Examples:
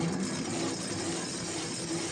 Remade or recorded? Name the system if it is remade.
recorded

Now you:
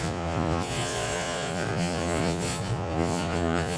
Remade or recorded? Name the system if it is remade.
remade, vocoder, Vocos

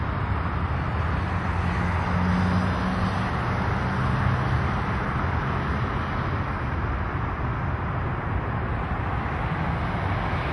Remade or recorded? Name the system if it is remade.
recorded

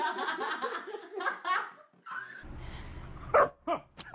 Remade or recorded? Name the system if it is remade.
recorded